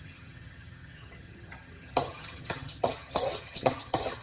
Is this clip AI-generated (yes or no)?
yes